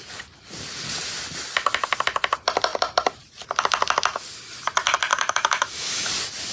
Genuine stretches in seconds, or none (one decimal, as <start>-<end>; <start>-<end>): 0.0-5.1; 6.1-6.5

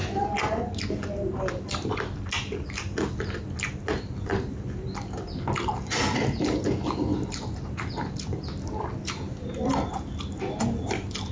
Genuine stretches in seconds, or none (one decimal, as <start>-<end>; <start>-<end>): 0.0-11.3